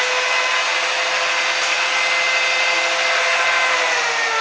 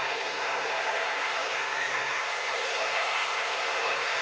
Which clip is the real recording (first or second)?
first